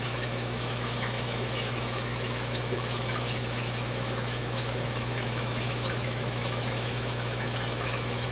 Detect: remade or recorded remade